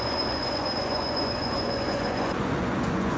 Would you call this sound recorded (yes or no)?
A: no